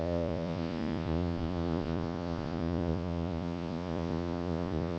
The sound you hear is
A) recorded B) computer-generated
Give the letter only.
B